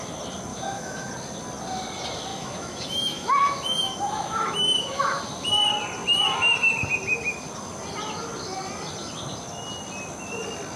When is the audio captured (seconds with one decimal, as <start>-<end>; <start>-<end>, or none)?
0.0-0.5; 1.1-2.3; 5.2-10.8